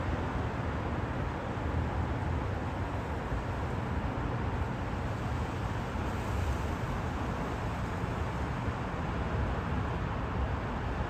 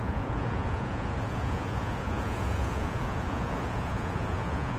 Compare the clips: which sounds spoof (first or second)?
second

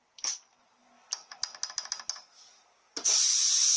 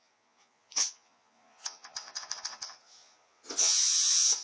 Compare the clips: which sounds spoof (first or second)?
second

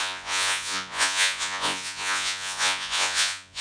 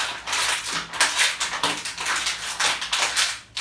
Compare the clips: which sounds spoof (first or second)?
first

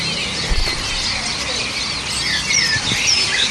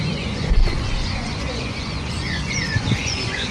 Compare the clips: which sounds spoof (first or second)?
second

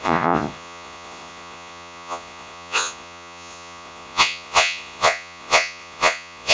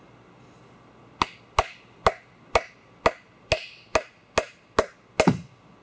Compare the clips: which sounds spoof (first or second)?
first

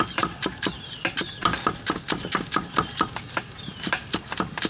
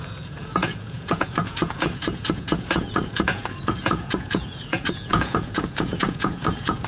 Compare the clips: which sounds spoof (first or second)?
second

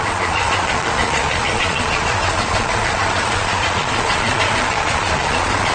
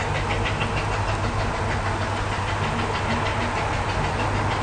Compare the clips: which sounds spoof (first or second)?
first